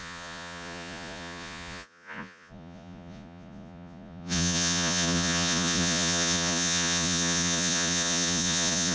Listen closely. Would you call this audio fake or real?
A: fake